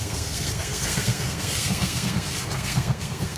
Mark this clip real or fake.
fake